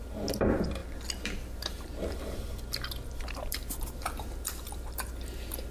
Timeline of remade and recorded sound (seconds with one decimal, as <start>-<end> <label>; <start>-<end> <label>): 0.0-0.8 recorded; 0.8-4.2 remade; 4.2-5.7 recorded